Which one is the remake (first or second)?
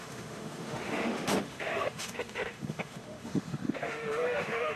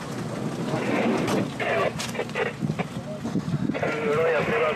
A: first